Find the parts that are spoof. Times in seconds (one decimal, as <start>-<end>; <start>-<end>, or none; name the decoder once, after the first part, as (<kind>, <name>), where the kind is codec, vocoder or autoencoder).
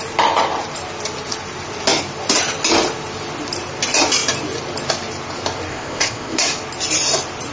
5.7-6.4 (codec, ZipCodec)